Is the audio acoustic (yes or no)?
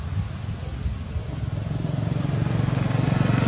yes